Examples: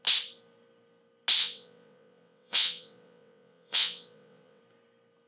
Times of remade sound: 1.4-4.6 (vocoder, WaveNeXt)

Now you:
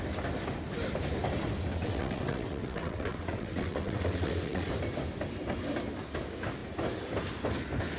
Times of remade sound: 1.7-4.7 (vocoder, WaveNeXt)

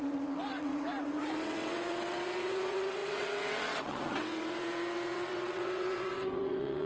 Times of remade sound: 0.0-6.9 (vocoder, WaveNeXt)

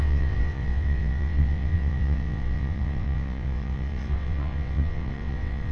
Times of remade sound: 0.0-5.7 (vocoder, WaveNeXt)

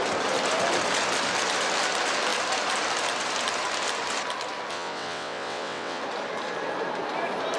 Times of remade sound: 4.7-6.0 (vocoder, WaveNeXt)

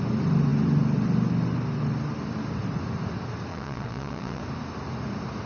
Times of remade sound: 3.5-4.4 (vocoder, WaveNeXt)

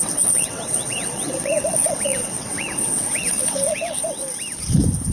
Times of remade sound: 0.0-4.2 (vocoder, WaveNeXt)

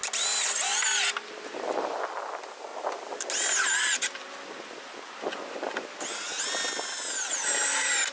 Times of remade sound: none